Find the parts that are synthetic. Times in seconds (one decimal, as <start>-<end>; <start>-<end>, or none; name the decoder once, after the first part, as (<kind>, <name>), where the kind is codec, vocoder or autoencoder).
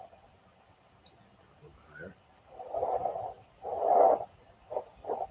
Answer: 1.7-5.3 (vocoder, BigVGAN v2)